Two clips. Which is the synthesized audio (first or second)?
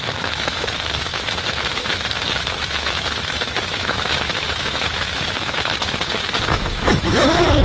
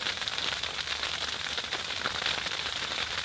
first